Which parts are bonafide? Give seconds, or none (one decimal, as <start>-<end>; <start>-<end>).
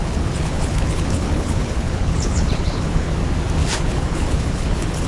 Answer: 3.1-3.6